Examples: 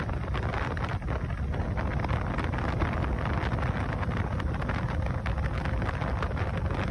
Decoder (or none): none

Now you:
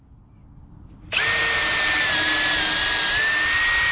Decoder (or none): none